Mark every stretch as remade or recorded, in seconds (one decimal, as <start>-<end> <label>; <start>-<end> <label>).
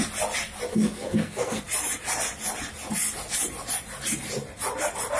0.0-0.7 recorded; 0.7-1.6 remade; 1.6-5.2 recorded